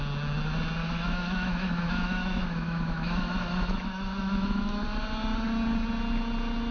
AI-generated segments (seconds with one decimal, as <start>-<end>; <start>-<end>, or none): 0.8-4.8